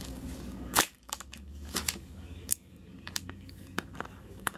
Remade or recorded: remade